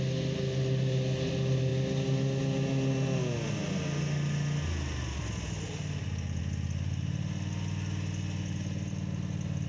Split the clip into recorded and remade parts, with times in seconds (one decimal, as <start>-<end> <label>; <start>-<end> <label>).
0.0-9.7 recorded

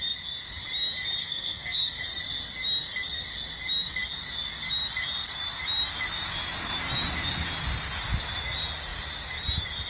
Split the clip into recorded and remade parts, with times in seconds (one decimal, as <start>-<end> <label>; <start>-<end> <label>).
0.0-1.2 recorded; 1.2-2.0 remade; 2.0-9.9 recorded

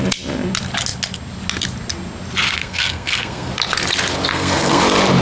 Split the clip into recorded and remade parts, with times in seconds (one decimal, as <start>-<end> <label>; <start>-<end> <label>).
0.0-2.6 recorded; 2.6-3.5 remade; 3.5-4.3 recorded; 4.3-4.8 remade; 4.8-5.2 recorded

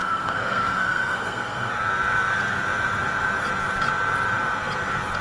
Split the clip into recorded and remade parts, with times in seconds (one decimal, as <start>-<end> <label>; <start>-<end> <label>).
0.0-1.7 remade; 1.7-5.2 recorded